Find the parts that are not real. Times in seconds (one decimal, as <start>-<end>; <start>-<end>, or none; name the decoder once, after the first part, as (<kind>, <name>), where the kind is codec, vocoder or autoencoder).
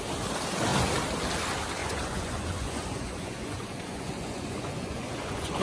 1.8-5.6 (vocoder, Vocos)